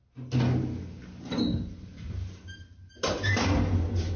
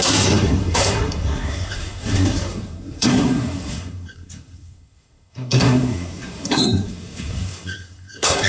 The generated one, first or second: second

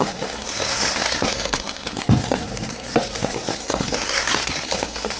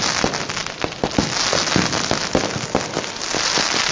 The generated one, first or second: first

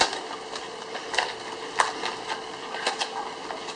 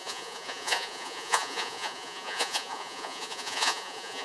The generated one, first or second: second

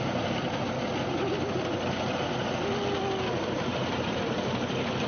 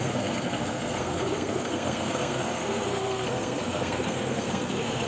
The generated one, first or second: second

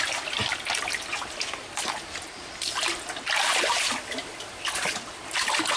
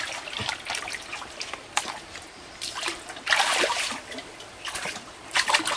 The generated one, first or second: second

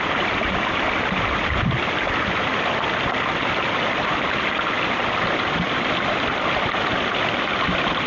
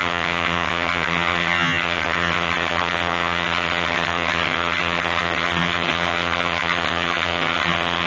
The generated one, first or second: second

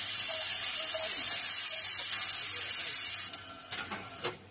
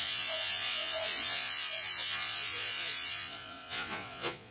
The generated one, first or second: second